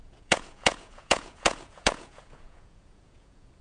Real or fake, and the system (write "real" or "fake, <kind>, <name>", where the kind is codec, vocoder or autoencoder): fake, vocoder, Vocos